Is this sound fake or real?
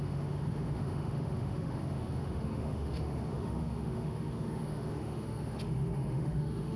fake